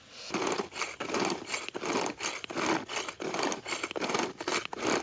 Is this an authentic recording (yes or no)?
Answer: yes